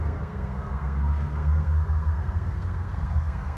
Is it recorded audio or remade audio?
remade